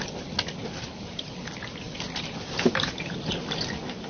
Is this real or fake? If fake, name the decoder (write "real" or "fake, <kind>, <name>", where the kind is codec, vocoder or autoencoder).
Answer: real